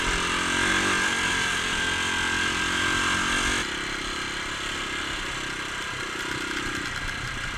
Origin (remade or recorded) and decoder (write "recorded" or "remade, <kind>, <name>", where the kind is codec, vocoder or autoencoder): recorded